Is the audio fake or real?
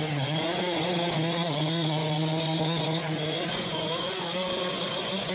fake